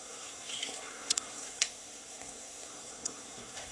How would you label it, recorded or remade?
remade